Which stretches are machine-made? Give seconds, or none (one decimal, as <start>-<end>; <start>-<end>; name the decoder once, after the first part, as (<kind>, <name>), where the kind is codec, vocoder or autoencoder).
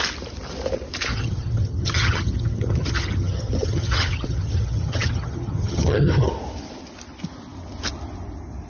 1.1-6.3 (vocoder, HiFi-GAN)